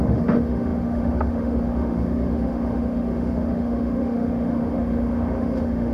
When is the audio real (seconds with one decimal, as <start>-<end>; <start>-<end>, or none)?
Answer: none